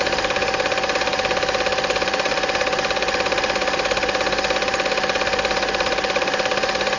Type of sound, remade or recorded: remade